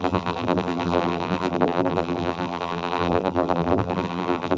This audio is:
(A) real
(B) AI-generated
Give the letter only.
B